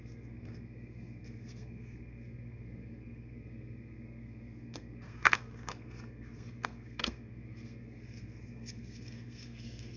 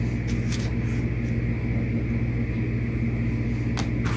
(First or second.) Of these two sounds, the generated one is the first